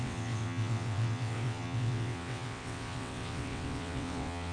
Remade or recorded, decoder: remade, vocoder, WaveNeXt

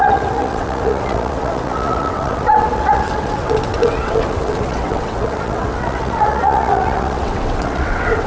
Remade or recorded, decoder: remade, vocoder, WaveNeXt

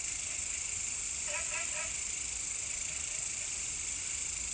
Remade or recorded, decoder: recorded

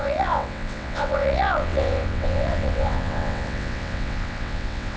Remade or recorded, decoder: remade, vocoder, WaveNeXt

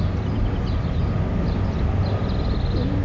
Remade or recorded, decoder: recorded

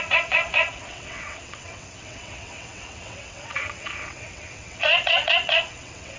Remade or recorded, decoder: remade, vocoder, WaveNeXt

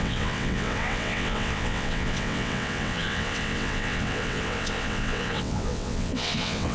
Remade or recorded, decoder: remade, vocoder, WaveNeXt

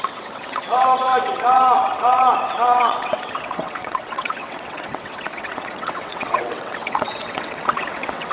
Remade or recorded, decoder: remade, vocoder, WaveNeXt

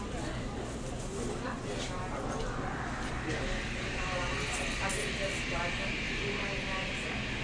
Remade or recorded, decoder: recorded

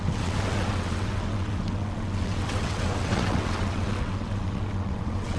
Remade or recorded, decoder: remade, vocoder, WaveNeXt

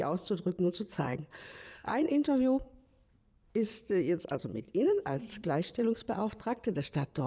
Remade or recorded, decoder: remade, vocoder, WaveNeXt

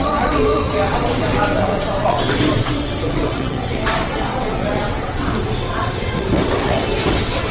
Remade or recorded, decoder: remade, vocoder, WaveNeXt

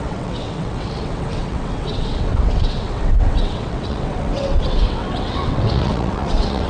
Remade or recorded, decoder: remade, vocoder, WaveNeXt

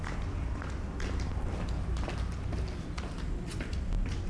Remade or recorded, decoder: recorded